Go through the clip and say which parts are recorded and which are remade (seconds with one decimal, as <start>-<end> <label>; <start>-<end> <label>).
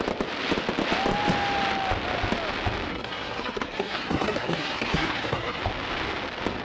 0.0-2.9 recorded; 2.9-5.6 remade; 5.6-6.6 recorded